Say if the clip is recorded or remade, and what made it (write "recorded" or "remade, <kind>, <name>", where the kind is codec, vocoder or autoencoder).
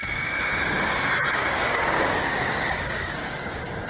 remade, codec, DAC